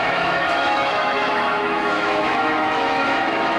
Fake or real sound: fake